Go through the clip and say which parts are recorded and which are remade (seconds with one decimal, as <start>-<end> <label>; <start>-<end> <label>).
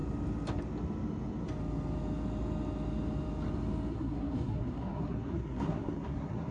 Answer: 0.0-3.9 recorded; 3.9-6.5 remade